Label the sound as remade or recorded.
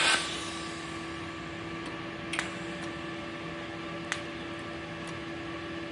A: recorded